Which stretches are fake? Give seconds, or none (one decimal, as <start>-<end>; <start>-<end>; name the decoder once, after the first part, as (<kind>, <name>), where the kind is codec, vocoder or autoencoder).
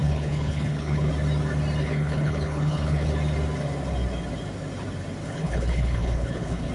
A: 0.0-1.1 (codec, HILCodec); 1.8-3.1; 5.2-6.7